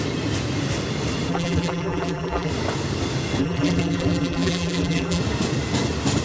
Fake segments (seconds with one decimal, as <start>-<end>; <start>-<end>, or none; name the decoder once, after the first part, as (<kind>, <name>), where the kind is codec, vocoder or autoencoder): 1.3-2.5 (vocoder, BigVGAN v2); 3.4-5.2

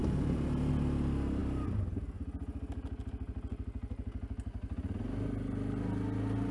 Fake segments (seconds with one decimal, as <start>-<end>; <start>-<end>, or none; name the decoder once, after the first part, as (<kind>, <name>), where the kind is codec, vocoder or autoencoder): 0.0-0.7 (vocoder, BigVGAN v2)